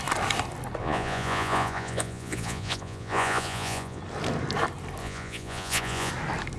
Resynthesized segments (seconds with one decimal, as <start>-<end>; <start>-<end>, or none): 0.8-4.0; 5.0-6.1